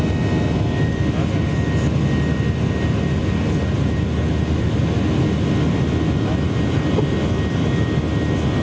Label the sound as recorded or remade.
recorded